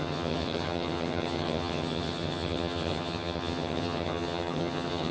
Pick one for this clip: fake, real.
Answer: fake